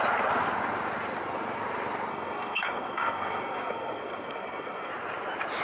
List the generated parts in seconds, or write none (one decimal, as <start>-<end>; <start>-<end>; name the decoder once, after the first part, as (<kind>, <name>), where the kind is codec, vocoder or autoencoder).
2.1-4.9 (codec, SNAC)